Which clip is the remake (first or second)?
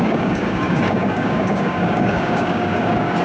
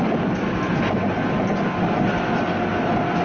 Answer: first